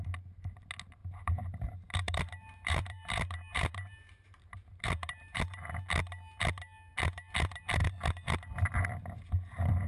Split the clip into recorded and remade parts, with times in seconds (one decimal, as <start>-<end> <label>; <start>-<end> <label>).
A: 0.0-1.0 recorded; 1.0-5.4 remade; 5.4-9.9 recorded